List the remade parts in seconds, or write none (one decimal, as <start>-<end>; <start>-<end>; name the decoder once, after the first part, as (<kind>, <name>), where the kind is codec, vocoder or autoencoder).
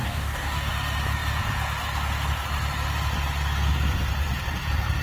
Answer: 0.0-0.7 (codec, DAC)